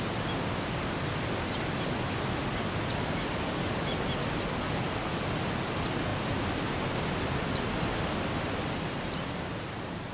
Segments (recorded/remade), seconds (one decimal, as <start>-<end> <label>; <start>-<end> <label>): 0.0-10.1 recorded

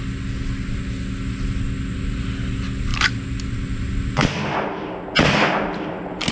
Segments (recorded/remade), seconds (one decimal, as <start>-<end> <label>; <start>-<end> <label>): 0.0-6.3 recorded

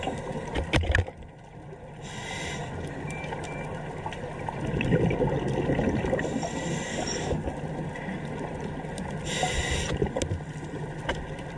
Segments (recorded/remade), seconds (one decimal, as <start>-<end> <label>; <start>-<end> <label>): 0.0-6.9 recorded; 6.9-7.5 remade; 7.5-11.6 recorded

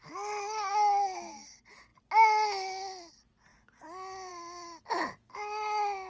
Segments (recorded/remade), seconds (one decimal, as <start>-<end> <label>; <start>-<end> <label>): 0.0-6.1 recorded

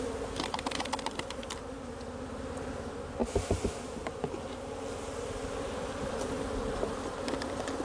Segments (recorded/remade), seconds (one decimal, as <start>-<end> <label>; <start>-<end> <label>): 0.0-7.8 recorded

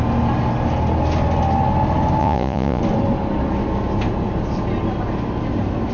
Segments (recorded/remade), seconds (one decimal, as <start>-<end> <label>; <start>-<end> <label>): 0.0-2.2 recorded; 2.2-2.8 remade; 2.8-5.9 recorded

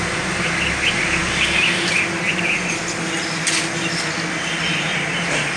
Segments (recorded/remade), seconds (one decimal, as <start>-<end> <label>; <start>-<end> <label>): 0.0-5.6 recorded

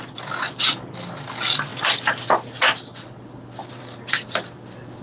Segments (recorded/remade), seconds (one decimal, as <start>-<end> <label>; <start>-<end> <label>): 0.0-5.0 recorded